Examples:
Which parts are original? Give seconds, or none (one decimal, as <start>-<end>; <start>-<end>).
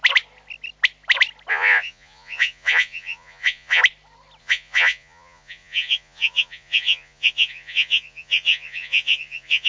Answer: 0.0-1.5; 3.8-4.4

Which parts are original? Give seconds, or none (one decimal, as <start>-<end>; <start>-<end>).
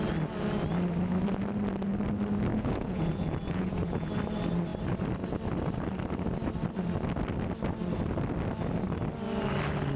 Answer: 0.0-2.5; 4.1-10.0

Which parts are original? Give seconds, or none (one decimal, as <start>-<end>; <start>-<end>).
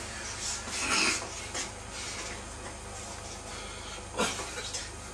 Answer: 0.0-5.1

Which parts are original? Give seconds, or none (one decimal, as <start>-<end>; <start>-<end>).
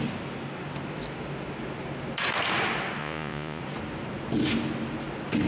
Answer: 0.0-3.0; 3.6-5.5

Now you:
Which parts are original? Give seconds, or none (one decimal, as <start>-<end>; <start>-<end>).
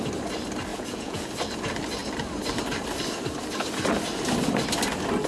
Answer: 0.0-0.7; 1.3-5.3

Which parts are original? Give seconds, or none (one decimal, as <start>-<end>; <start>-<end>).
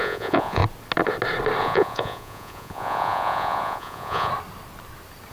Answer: 0.6-1.6; 4.3-5.3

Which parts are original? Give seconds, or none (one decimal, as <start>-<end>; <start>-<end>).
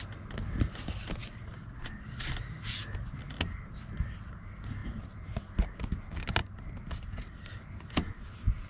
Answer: 0.0-8.7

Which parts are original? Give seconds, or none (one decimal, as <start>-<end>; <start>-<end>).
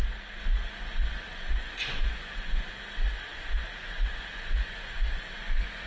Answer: 0.0-0.6; 2.7-3.3